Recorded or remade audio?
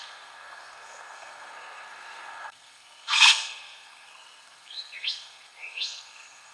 remade